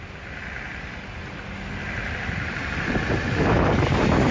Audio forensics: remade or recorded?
recorded